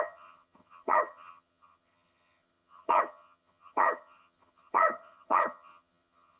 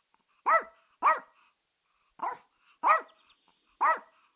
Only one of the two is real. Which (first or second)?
second